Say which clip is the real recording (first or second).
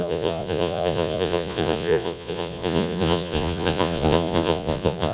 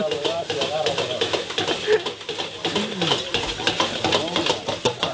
second